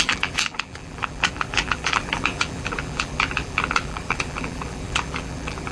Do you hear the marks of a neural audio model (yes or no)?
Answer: yes